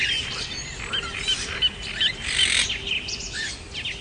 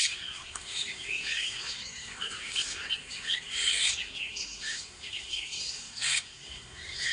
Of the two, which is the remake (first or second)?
second